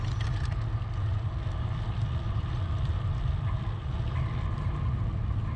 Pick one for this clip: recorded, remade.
remade